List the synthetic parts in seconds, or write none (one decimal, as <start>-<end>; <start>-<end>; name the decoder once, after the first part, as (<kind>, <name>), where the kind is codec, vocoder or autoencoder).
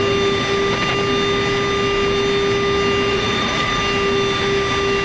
3.1-3.8 (vocoder, Vocos)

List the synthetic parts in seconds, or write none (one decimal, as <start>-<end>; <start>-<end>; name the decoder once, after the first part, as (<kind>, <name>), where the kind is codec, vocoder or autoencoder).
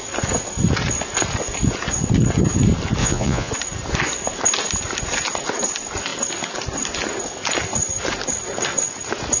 3.0-3.5 (vocoder, Vocos)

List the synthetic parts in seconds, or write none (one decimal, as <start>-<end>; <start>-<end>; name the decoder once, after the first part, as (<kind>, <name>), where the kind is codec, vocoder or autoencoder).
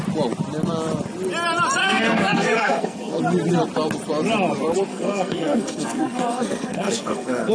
1.8-3.2 (codec, SNAC); 4.9-7.5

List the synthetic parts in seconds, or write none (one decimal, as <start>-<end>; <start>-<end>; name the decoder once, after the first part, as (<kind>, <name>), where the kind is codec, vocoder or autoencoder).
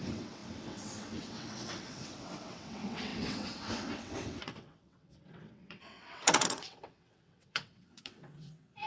0.0-8.9 (vocoder, WaveNeXt)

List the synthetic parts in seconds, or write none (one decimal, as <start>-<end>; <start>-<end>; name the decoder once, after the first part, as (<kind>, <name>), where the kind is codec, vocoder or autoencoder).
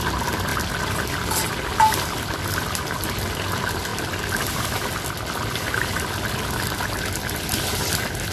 none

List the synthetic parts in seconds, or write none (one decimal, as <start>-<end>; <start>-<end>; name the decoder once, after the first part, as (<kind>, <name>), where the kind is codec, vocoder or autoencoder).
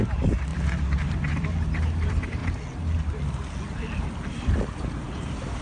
0.0-0.5 (vocoder, BigVGAN v2); 1.0-2.4; 4.3-5.6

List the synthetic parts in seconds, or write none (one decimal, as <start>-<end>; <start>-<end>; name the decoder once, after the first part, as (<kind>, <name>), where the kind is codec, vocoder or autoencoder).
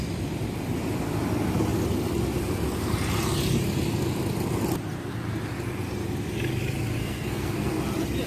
7.0-7.7 (codec, SNAC)